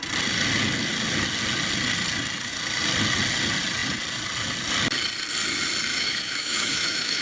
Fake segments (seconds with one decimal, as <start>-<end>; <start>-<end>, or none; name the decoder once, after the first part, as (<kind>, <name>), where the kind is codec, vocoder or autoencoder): 5.9-7.2 (autoencoder, DAC-VAE)

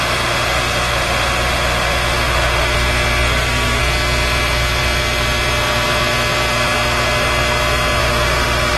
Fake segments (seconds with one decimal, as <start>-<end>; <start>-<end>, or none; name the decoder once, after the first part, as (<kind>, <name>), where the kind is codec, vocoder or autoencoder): 0.0-2.7 (autoencoder, DAC-VAE); 3.3-3.8; 8.0-8.8